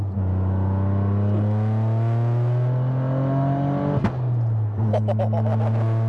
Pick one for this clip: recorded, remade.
recorded